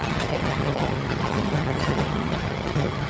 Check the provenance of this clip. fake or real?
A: fake